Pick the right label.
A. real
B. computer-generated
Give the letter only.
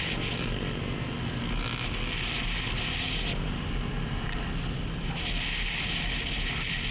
A